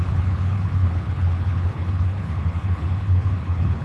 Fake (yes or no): yes